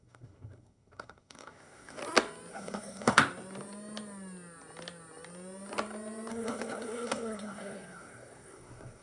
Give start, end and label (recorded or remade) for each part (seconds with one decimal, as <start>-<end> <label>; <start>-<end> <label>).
0.0-2.0 remade; 2.0-2.5 recorded; 2.5-3.2 remade; 3.2-6.3 recorded; 6.3-9.0 remade